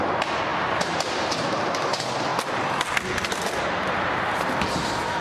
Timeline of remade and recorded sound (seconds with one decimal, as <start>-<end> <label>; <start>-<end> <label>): 0.0-0.5 recorded; 0.5-1.9 remade; 1.9-5.2 recorded